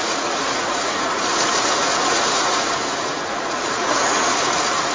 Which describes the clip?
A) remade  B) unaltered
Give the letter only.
A